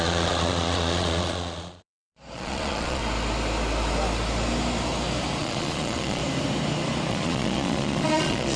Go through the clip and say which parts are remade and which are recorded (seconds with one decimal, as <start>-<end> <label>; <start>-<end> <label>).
0.0-3.0 remade; 3.0-5.4 recorded; 5.4-6.2 remade; 6.2-7.1 recorded; 7.1-8.6 remade